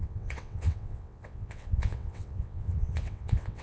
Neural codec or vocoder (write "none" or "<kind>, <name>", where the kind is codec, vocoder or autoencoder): vocoder, WaveNeXt